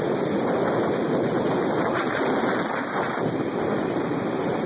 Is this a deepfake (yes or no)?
no